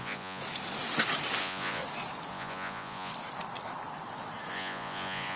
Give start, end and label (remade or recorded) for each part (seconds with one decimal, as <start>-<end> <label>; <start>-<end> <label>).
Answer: 0.0-0.4 remade; 0.4-1.4 recorded; 1.4-1.8 remade; 1.8-2.3 recorded; 2.3-3.1 remade; 3.1-4.5 recorded; 4.5-5.4 remade

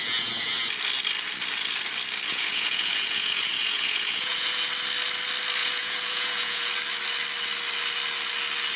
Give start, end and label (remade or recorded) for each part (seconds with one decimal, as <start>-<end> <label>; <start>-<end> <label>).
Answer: 0.0-2.3 recorded; 2.3-4.6 remade; 4.6-5.6 recorded; 5.6-6.7 remade; 6.7-8.8 recorded

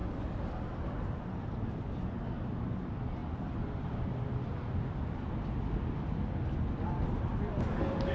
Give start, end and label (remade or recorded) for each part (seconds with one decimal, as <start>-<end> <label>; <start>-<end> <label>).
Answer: 0.0-8.1 recorded

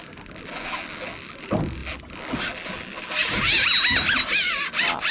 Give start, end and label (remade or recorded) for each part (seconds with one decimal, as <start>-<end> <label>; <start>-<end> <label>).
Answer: 0.0-5.1 recorded